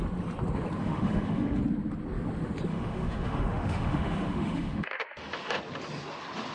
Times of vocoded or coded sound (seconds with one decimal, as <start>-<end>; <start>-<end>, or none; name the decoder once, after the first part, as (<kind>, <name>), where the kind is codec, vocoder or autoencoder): 0.8-1.6 (autoencoder, DAC-VAE); 2.7-5.6